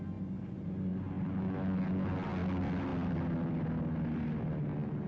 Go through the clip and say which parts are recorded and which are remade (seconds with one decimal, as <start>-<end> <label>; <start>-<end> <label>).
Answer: 0.0-5.1 recorded